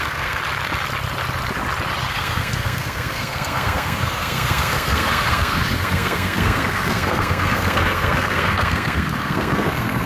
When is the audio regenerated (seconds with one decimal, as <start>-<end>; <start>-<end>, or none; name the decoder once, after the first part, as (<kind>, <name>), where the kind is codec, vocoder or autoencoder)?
0.0-0.4 (codec, SNAC); 2.1-10.1